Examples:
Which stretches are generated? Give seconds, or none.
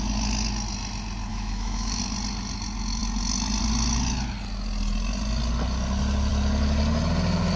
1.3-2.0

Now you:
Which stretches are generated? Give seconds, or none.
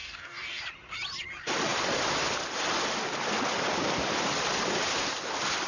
0.0-0.6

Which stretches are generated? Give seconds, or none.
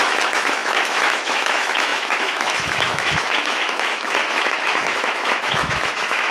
0.0-6.3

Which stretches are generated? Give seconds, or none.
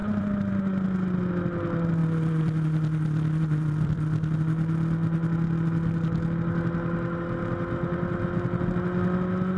0.0-0.5; 2.0-4.4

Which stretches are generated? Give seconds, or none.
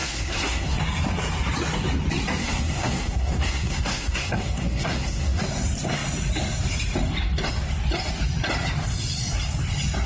0.0-0.8; 2.4-5.4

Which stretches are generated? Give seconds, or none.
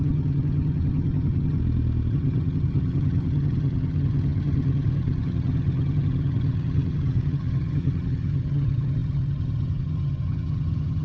0.0-1.6; 2.1-11.0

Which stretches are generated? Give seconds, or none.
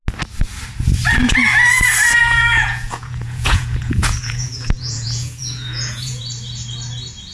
2.2-6.2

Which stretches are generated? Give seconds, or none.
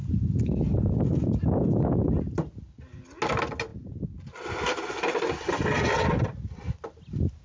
none